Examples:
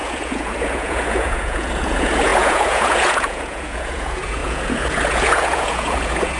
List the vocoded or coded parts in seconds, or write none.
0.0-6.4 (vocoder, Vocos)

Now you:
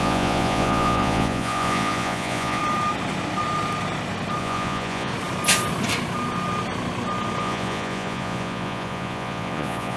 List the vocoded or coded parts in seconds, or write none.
0.0-2.6 (vocoder, Vocos); 4.4-5.1; 7.4-10.0